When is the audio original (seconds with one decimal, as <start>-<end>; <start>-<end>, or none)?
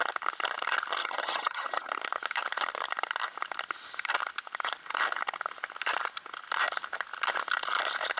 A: 0.0-1.0; 1.9-8.2